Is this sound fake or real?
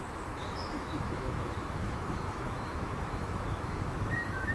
fake